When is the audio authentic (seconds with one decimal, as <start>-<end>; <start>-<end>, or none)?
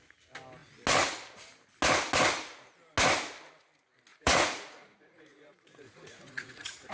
0.0-4.1